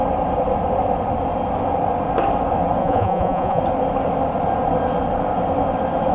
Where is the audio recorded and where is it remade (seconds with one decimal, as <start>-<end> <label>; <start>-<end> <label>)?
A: 0.0-2.8 recorded; 2.8-3.6 remade; 3.6-6.1 recorded